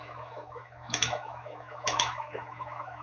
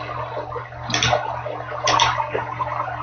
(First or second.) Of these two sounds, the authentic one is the second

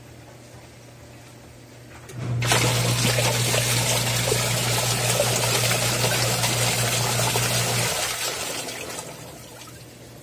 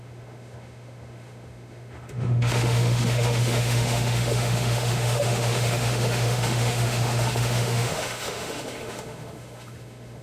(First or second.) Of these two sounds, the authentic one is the first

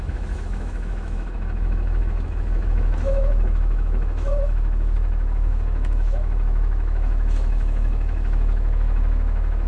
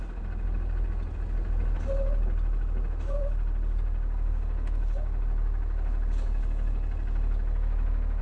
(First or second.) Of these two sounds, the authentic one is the second